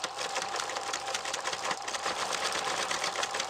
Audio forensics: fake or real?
real